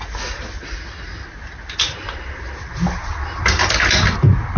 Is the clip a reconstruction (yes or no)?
no